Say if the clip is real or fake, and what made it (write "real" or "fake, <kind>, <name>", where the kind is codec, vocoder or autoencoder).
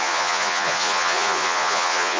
fake, vocoder, Vocos